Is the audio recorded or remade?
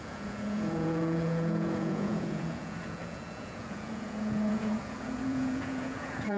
remade